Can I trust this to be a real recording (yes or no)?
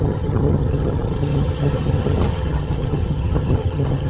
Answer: no